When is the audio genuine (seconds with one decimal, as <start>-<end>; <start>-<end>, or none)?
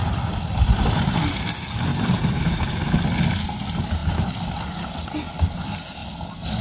0.8-1.9; 2.6-6.6